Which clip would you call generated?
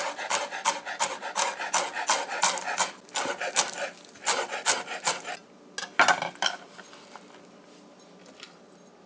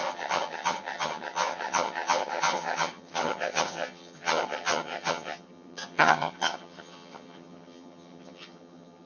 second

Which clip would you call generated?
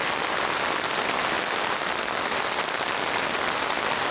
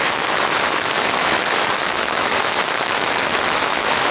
second